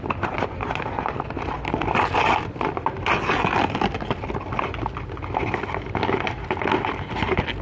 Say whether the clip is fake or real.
real